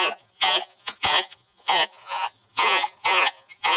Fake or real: fake